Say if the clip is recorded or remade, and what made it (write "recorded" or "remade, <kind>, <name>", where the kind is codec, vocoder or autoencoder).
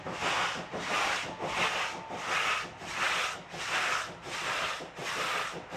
recorded